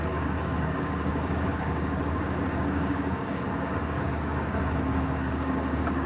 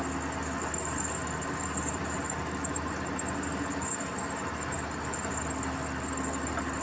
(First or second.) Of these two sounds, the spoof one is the first